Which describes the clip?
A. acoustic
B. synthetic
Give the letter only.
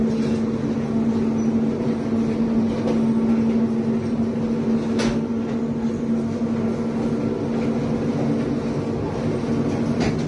A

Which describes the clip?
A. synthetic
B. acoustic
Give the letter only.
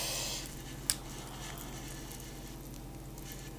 B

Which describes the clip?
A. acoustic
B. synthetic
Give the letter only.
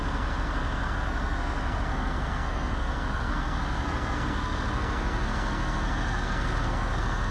B